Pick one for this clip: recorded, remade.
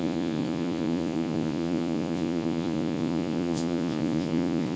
remade